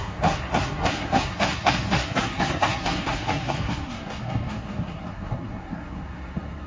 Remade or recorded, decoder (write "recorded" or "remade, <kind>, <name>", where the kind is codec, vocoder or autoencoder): remade, codec, SNAC